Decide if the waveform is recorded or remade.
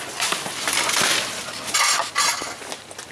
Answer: recorded